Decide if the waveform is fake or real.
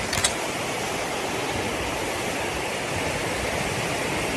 real